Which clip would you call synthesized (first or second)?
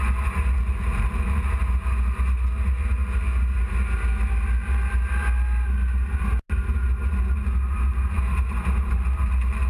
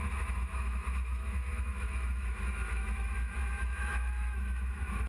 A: second